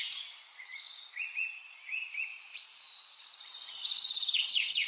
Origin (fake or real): fake